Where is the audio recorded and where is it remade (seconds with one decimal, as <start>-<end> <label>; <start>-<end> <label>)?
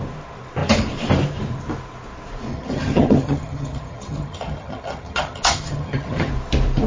0.0-2.5 recorded; 2.5-6.3 remade; 6.3-6.9 recorded